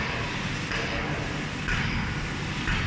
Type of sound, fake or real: real